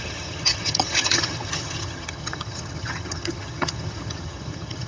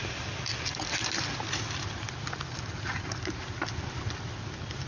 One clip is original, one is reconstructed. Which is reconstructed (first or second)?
first